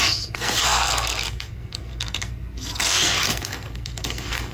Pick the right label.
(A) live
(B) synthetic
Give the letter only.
B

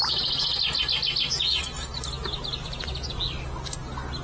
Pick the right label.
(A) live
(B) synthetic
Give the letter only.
A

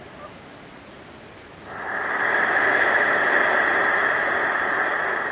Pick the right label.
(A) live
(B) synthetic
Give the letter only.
A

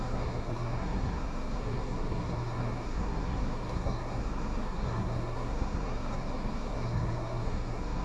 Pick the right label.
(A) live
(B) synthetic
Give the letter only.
B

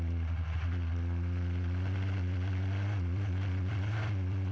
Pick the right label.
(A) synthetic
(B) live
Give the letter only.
B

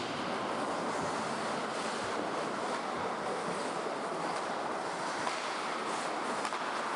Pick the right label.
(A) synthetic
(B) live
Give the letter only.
B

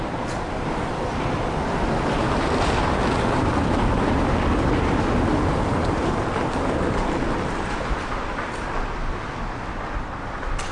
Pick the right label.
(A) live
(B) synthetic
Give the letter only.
A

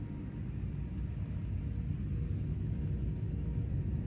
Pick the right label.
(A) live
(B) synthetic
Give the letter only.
A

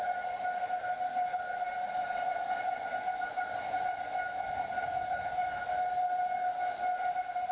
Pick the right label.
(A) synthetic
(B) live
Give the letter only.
B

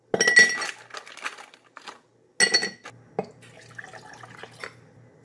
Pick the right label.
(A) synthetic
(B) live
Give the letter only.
B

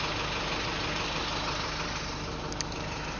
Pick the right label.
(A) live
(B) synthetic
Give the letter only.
A